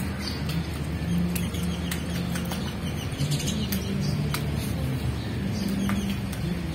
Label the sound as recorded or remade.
recorded